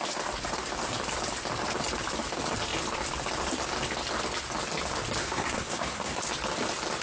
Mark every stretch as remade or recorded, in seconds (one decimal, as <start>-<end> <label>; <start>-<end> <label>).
0.0-5.2 recorded; 5.2-6.2 remade; 6.2-7.0 recorded